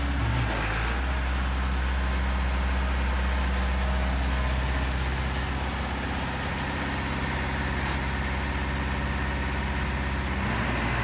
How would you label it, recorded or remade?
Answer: recorded